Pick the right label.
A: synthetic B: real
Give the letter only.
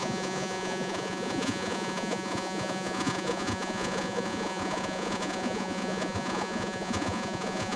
A